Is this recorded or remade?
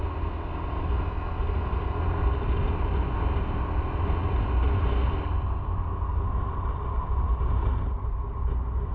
recorded